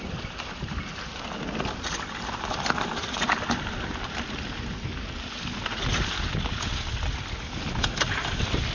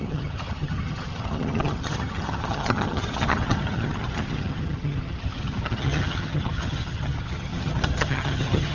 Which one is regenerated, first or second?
second